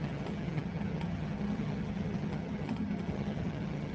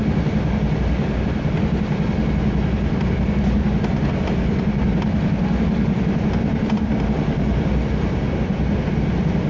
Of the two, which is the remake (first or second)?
first